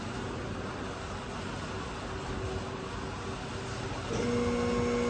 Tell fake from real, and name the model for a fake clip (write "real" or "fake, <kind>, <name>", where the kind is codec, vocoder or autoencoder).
real